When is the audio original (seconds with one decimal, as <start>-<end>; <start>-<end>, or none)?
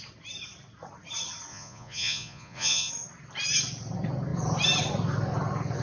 0.0-1.5; 2.9-5.8